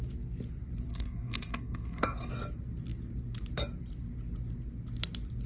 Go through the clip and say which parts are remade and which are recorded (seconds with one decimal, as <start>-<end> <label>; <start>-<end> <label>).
0.0-0.9 recorded; 0.9-2.3 remade; 2.3-5.5 recorded